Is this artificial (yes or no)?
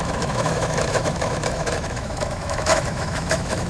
yes